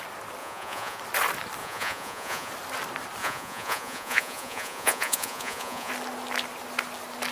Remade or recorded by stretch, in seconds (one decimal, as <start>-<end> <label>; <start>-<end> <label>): 0.0-0.4 recorded; 0.4-1.0 remade; 1.0-1.6 recorded; 1.6-2.5 remade; 2.5-3.2 recorded; 3.2-5.9 remade; 5.9-7.3 recorded